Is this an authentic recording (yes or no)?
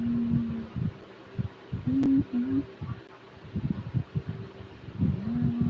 yes